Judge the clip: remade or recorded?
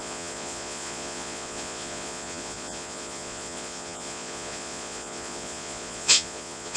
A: remade